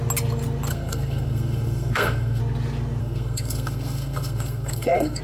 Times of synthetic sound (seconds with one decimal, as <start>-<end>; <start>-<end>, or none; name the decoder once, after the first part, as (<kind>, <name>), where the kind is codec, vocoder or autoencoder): 0.7-2.4 (codec, SNAC); 3.0-5.2